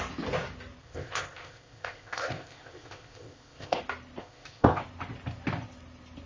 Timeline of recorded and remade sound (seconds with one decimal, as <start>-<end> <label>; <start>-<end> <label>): 0.0-0.8 recorded; 0.8-3.8 remade; 3.8-4.2 recorded; 4.2-4.8 remade; 4.8-6.3 recorded